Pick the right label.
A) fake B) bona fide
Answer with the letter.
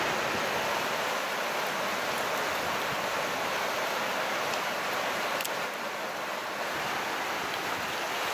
B